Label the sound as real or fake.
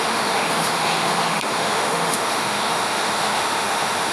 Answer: fake